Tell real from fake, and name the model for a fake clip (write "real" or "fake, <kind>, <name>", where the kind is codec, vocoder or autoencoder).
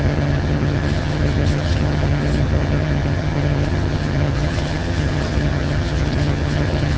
fake, vocoder, HiFi-GAN